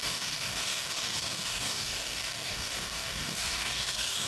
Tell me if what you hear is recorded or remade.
remade